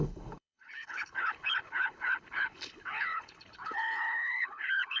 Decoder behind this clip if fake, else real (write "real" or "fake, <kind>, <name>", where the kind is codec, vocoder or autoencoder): fake, codec, HILCodec